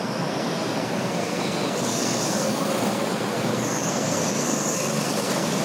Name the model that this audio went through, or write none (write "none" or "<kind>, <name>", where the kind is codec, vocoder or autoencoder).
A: codec, SNAC